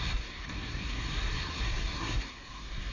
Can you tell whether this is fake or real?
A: fake